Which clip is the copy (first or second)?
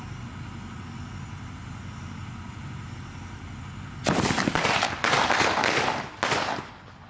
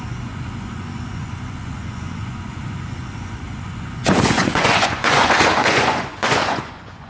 second